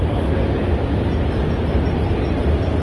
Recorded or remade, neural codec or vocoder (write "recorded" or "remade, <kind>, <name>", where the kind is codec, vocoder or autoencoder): recorded